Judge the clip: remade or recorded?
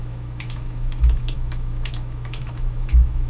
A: remade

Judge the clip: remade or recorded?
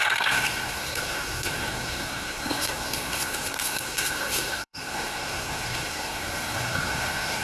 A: remade